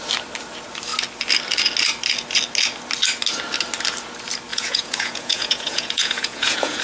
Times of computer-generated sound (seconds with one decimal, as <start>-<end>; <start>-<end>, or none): 4.5-6.8